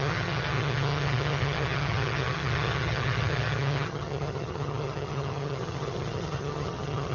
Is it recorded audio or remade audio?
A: remade